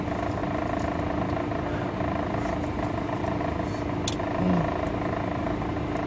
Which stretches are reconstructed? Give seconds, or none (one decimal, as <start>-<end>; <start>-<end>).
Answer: none